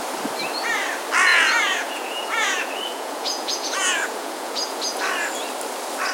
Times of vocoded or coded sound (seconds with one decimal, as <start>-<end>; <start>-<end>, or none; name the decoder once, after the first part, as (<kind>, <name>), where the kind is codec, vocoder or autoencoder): 1.3-5.0 (vocoder, Vocos)